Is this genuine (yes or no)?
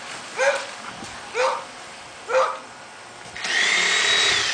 yes